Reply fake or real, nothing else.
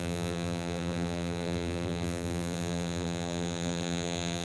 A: fake